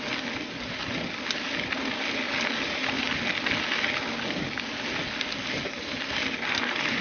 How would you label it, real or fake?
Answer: real